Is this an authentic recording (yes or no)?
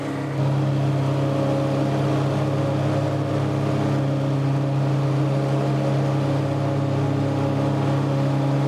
yes